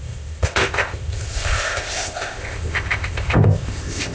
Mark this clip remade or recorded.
remade